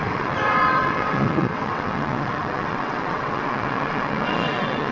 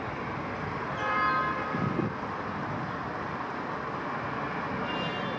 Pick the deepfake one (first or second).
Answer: first